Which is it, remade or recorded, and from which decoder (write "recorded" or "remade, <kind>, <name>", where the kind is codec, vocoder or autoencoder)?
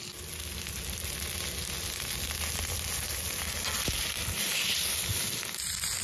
recorded